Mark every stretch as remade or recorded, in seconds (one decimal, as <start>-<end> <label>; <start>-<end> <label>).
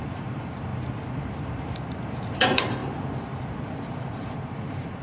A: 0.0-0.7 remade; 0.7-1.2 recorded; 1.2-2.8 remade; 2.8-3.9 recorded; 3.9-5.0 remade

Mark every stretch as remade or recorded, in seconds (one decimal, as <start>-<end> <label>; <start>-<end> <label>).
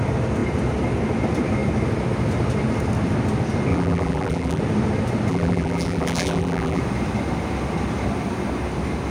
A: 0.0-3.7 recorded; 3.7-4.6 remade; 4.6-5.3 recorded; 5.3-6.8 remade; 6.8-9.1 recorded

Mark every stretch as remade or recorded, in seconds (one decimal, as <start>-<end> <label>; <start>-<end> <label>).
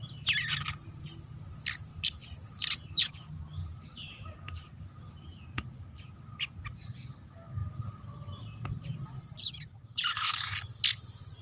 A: 0.0-1.9 recorded; 1.9-3.1 remade; 3.1-3.9 recorded; 3.9-4.8 remade; 4.8-7.6 recorded; 7.6-10.3 remade; 10.3-11.4 recorded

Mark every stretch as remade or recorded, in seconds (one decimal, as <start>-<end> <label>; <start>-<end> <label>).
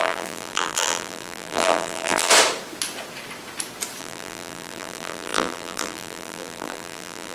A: 0.0-2.3 remade; 2.3-4.0 recorded; 4.0-7.3 remade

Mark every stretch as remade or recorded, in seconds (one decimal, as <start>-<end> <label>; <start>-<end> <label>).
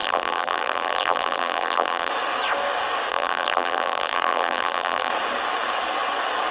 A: 0.0-2.1 remade; 2.1-3.1 recorded; 3.1-5.1 remade; 5.1-6.5 recorded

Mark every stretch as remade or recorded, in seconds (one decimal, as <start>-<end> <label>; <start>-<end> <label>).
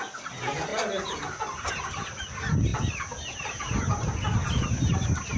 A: 0.0-5.4 recorded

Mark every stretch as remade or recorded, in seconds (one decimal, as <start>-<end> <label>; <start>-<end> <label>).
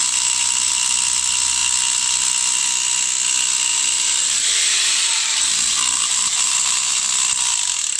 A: 0.0-3.7 recorded; 3.7-6.9 remade; 6.9-8.0 recorded